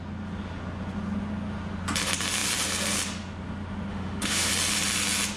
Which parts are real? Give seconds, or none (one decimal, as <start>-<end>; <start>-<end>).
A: 0.0-3.9; 4.5-5.4